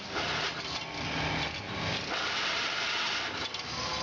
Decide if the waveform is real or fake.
real